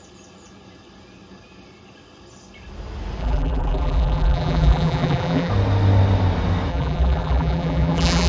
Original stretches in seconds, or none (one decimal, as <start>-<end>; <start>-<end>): 0.0-3.2; 5.5-6.7